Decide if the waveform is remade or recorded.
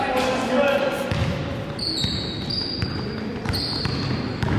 recorded